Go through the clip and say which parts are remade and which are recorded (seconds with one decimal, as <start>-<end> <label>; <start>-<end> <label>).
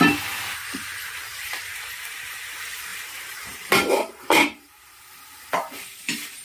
0.0-2.9 recorded; 2.9-5.0 remade; 5.0-6.4 recorded